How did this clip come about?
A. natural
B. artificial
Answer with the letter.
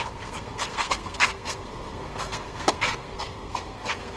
B